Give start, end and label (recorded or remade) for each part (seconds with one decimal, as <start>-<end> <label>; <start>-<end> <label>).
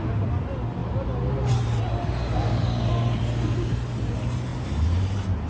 0.0-5.5 recorded